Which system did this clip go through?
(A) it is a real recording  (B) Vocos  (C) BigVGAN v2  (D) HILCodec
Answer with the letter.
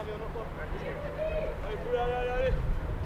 A